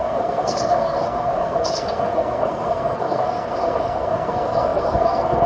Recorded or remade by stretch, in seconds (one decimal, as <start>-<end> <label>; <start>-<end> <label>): 0.0-5.5 remade

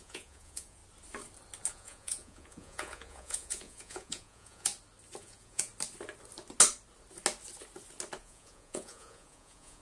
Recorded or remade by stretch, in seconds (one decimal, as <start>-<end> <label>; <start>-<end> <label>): 0.0-0.8 remade; 0.8-1.7 recorded; 1.7-4.7 remade; 4.7-5.2 recorded; 5.2-5.7 remade; 5.7-8.2 recorded; 8.2-9.8 remade

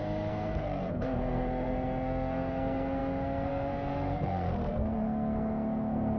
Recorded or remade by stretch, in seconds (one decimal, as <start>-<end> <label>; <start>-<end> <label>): 0.0-6.2 remade

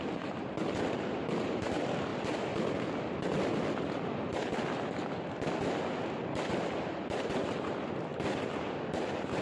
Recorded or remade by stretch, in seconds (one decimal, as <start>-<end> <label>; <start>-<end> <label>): 0.0-9.4 recorded